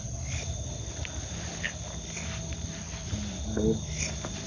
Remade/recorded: recorded